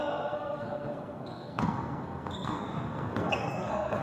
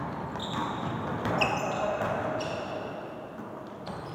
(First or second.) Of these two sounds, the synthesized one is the first